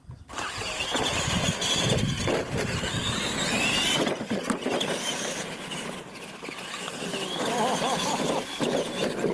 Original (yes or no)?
yes